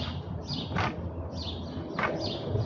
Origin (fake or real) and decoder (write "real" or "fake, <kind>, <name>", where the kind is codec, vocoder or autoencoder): real